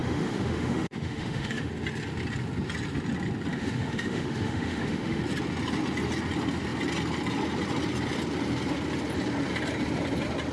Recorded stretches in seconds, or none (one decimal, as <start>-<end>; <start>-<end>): 1.7-3.5; 5.2-10.5